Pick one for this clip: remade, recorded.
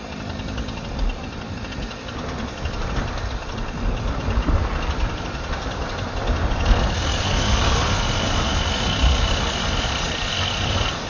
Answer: recorded